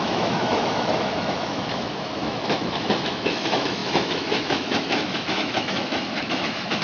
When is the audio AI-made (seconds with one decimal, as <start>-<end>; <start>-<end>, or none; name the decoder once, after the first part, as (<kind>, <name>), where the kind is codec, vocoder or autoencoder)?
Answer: 0.0-6.8 (autoencoder, DAC-VAE)